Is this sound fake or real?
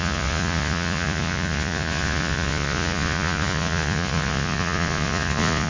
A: fake